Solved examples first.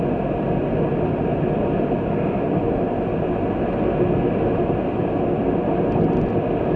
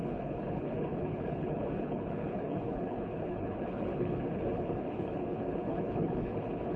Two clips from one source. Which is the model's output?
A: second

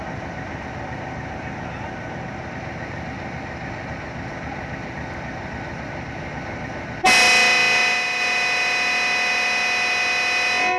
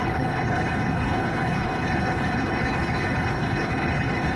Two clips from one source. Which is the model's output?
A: second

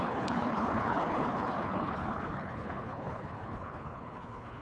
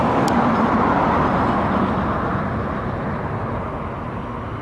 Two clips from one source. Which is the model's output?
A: first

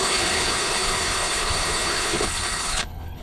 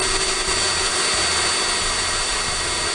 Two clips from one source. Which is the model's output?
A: first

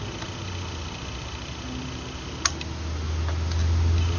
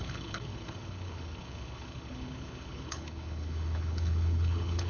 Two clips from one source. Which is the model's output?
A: second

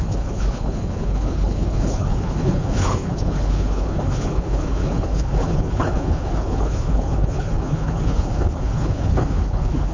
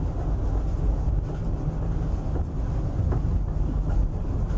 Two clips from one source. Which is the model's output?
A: first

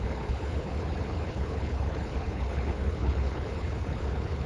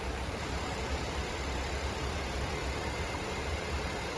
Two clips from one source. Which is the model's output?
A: first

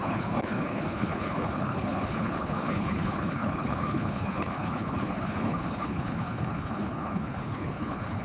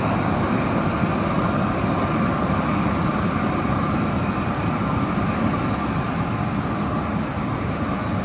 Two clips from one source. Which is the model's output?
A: first